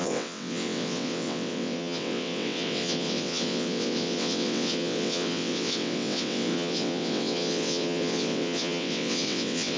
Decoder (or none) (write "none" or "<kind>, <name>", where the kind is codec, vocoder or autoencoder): vocoder, WaveNeXt